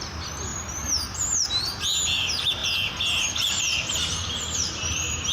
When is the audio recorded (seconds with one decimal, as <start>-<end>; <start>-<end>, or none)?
0.0-0.5; 1.7-2.6